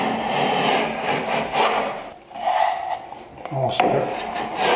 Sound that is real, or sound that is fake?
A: real